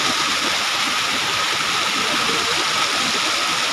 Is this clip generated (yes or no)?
no